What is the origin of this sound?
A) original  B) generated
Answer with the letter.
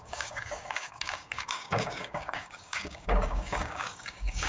B